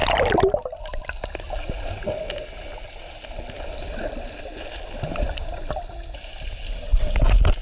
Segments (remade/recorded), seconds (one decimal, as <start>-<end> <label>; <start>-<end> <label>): 0.0-7.6 recorded